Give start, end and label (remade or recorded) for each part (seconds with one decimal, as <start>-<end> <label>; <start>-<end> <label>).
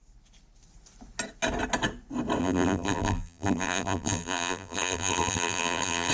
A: 0.0-2.4 recorded; 2.4-6.1 remade